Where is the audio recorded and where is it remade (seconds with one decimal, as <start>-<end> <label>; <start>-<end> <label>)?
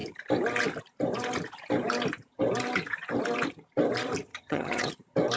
0.0-4.3 recorded; 4.3-4.9 remade; 4.9-5.4 recorded